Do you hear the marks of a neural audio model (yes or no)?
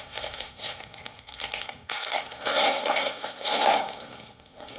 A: yes